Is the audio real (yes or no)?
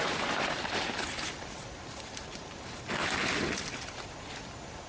yes